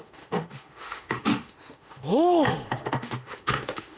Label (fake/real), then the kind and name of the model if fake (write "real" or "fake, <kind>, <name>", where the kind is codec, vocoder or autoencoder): fake, autoencoder, DAC-VAE